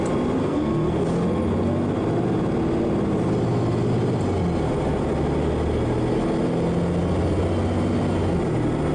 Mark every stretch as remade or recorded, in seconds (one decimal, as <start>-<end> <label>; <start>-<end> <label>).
0.0-0.4 recorded; 0.4-1.0 remade; 1.0-8.9 recorded